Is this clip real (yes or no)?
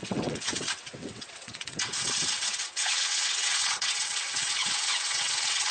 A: no